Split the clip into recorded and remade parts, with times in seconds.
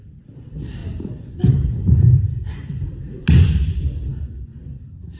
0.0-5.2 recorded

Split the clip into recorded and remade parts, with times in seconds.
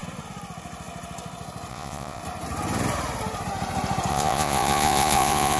0.0-1.7 recorded; 1.7-2.2 remade; 2.2-4.1 recorded; 4.1-5.6 remade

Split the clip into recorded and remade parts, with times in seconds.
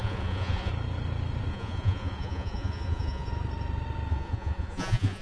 0.0-0.7 remade; 0.7-1.5 recorded; 1.5-3.3 remade; 3.3-4.1 recorded; 4.1-5.2 remade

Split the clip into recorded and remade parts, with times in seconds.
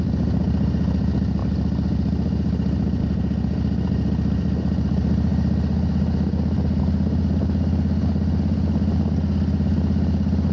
0.0-10.5 recorded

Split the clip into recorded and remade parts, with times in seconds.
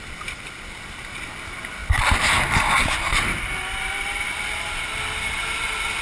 0.0-6.0 recorded